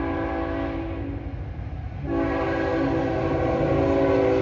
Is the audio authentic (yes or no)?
yes